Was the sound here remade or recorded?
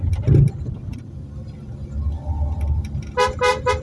recorded